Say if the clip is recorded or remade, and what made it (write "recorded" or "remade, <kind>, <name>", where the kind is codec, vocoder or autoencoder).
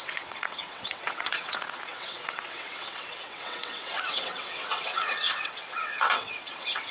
remade, vocoder, WaveNeXt